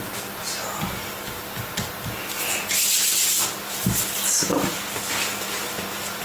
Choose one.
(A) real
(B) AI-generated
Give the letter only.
A